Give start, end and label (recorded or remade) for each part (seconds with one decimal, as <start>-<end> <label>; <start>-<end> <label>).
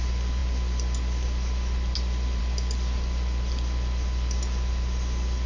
0.0-5.5 recorded